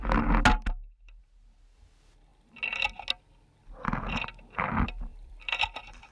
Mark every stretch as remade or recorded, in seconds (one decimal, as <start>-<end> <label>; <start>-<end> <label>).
0.0-5.1 recorded; 5.1-6.1 remade